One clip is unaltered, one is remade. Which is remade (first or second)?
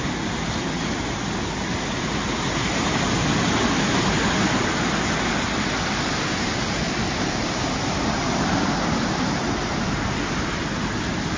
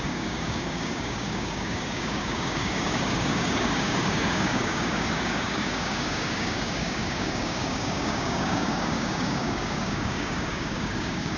second